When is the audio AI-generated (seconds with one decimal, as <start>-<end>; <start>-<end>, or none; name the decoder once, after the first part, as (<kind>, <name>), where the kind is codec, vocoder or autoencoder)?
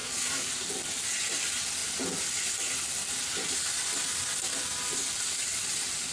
0.0-0.5 (codec, DAC)